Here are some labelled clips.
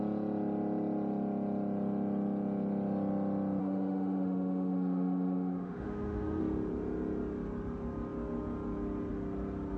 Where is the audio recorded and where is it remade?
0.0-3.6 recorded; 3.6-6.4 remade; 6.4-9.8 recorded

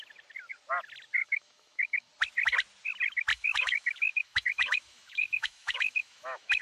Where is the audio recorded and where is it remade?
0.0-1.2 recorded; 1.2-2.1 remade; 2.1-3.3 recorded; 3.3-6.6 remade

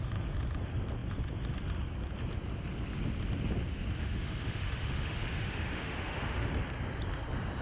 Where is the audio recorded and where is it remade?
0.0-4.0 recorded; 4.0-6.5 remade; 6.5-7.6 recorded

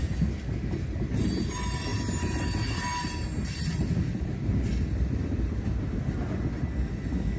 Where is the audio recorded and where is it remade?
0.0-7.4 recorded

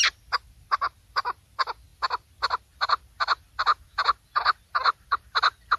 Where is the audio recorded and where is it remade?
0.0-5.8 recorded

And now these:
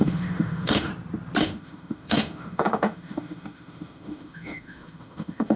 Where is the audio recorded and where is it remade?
0.0-0.9 remade; 0.9-1.4 recorded; 1.4-5.6 remade

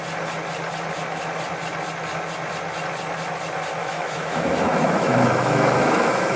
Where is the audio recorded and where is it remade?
0.0-3.8 recorded; 3.8-6.4 remade